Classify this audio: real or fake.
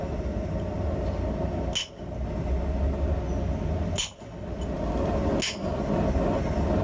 real